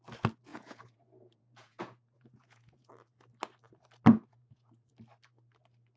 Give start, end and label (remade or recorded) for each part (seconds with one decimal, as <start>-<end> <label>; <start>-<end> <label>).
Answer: 0.0-0.5 recorded; 0.5-2.9 remade; 2.9-4.1 recorded; 4.1-4.9 remade; 4.9-6.0 recorded